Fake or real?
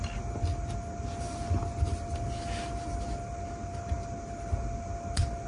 real